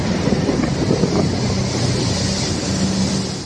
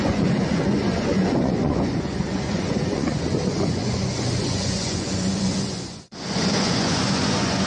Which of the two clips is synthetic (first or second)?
second